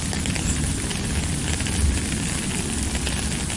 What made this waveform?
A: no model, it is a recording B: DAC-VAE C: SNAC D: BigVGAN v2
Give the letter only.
A